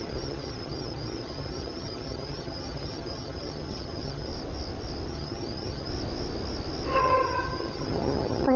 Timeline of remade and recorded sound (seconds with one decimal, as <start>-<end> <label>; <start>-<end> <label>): 0.0-4.3 remade; 4.3-5.1 recorded; 5.1-5.9 remade; 5.9-7.0 recorded; 7.0-8.6 remade